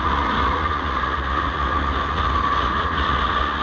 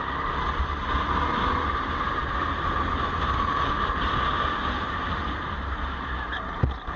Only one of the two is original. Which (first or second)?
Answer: second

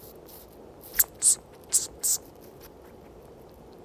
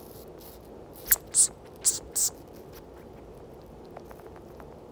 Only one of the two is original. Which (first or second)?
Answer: second